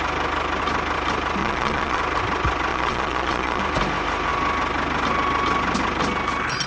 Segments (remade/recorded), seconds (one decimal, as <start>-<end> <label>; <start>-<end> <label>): 0.0-1.4 recorded; 1.4-2.0 remade; 2.0-2.7 recorded; 2.7-3.6 remade; 3.6-6.7 recorded